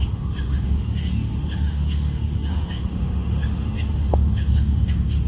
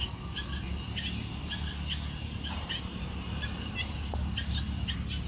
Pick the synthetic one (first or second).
first